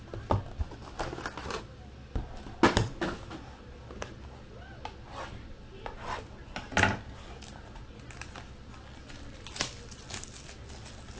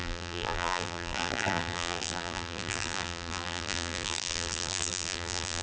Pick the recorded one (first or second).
first